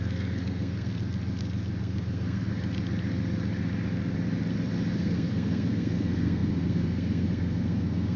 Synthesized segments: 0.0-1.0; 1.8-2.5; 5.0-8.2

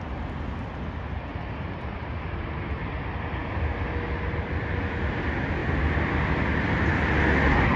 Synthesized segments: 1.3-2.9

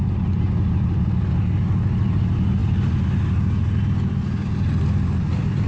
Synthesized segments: none